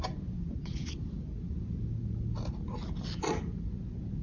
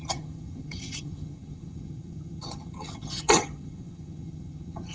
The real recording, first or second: first